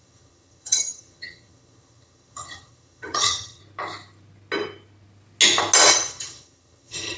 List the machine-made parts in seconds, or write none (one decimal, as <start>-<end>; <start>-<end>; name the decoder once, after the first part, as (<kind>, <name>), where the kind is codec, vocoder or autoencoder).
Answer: 0.0-3.6 (vocoder, HiFi-GAN); 5.9-7.2

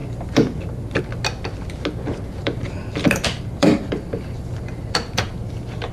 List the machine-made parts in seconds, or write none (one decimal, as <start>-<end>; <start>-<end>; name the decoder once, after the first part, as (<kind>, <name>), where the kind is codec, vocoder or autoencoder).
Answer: 0.0-1.0 (vocoder, BigVGAN v2); 2.4-5.9

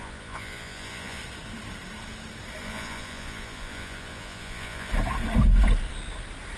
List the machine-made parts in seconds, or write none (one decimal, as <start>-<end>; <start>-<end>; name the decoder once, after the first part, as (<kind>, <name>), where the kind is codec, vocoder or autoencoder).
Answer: 0.0-1.2 (vocoder, Vocos); 2.6-4.9

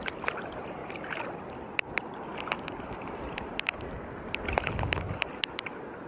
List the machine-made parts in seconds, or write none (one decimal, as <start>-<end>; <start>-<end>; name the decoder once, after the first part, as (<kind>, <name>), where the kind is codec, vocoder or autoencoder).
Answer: none

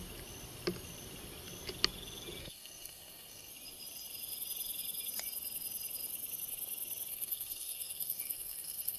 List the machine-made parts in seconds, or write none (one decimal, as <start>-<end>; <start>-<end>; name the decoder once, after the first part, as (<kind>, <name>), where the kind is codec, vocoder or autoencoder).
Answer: 2.4-3.5 (codec, SNAC); 7.1-9.0

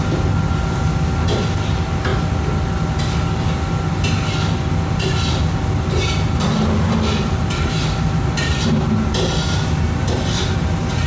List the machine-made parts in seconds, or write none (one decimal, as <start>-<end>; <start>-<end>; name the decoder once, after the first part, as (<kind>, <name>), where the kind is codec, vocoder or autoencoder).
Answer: none